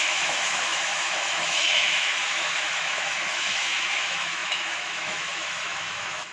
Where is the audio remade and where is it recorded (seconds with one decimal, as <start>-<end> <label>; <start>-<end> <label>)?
0.0-6.3 remade

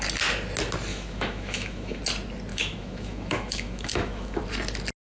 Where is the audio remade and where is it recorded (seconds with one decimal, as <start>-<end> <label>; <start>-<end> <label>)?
0.0-0.9 recorded; 0.9-2.0 remade; 2.0-2.5 recorded; 2.5-4.4 remade; 4.4-5.0 recorded

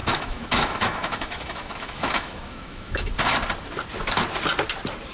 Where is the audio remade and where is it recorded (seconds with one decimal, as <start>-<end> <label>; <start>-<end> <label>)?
0.0-3.1 remade; 3.1-5.1 recorded